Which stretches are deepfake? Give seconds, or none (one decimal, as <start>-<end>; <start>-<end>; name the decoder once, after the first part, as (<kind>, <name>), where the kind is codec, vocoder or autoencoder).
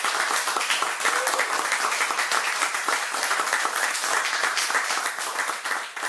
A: 2.3-3.9 (vocoder, BigVGAN v2); 4.4-5.0